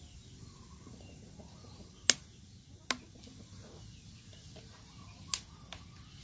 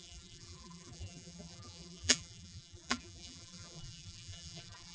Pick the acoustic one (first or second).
first